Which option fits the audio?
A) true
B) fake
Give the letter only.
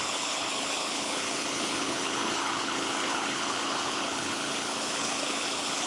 B